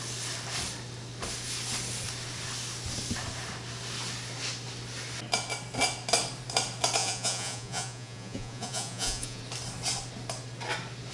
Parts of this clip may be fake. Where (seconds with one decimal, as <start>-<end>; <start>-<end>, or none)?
7.0-9.4